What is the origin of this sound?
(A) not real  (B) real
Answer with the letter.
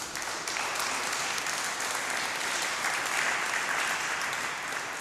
B